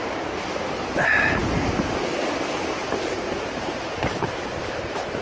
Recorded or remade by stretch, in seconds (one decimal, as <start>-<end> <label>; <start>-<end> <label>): 0.0-2.8 recorded; 2.8-5.2 remade